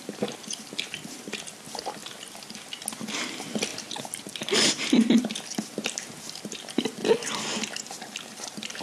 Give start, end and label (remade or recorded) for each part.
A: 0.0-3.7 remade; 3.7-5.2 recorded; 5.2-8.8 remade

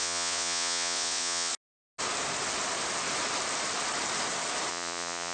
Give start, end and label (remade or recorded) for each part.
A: 0.0-1.5 remade; 1.5-4.7 recorded; 4.7-5.3 remade

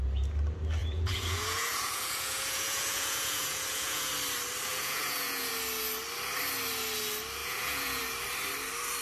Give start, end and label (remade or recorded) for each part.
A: 0.0-0.8 recorded; 0.8-4.1 remade; 4.1-4.7 recorded; 4.7-5.5 remade; 5.5-7.4 recorded; 7.4-8.0 remade; 8.0-9.0 recorded

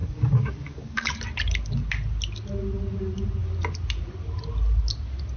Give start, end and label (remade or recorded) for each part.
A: 0.0-1.2 remade; 1.2-5.4 recorded

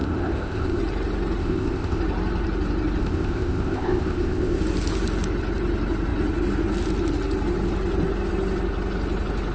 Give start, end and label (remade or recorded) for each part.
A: 0.0-0.8 remade; 0.8-1.4 recorded; 1.4-2.0 remade; 2.0-3.0 recorded; 3.0-4.6 remade; 4.6-9.5 recorded

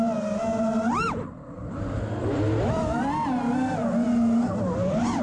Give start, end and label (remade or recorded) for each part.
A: 0.0-5.2 recorded

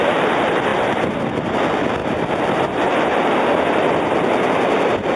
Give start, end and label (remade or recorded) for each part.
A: 0.0-5.2 recorded

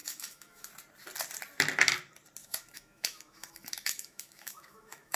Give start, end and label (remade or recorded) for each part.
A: 0.0-0.7 remade; 0.7-2.4 recorded; 2.4-5.2 remade